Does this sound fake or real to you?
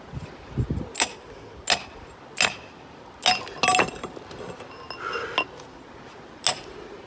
real